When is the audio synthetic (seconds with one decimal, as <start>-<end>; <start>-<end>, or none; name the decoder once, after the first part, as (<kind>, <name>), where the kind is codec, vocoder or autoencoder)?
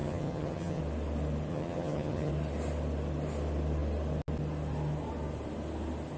0.0-0.8 (vocoder, HiFi-GAN); 1.5-2.3